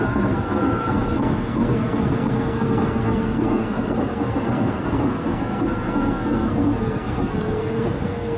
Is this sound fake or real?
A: fake